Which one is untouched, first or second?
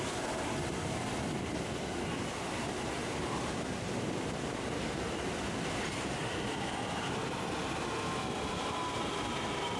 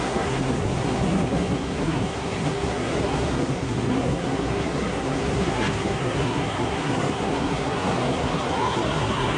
first